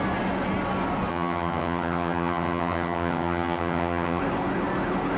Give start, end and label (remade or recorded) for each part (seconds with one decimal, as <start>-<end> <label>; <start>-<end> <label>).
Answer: 0.0-1.1 recorded; 1.1-4.2 remade; 4.2-5.2 recorded